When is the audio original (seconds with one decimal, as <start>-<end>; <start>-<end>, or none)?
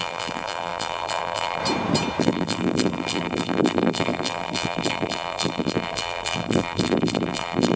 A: 1.6-2.2